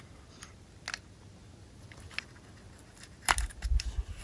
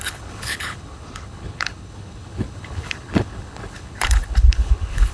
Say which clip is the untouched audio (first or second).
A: first